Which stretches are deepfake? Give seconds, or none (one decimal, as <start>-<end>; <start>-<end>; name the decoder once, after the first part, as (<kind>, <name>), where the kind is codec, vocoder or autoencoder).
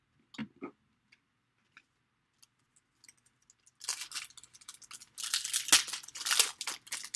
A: 0.4-1.8 (vocoder, BigVGAN v2)